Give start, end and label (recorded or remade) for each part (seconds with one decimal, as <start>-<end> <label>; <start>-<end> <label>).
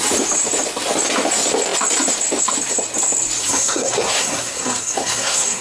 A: 0.0-3.4 recorded; 3.4-5.6 remade